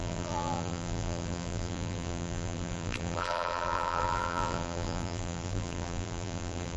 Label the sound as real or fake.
fake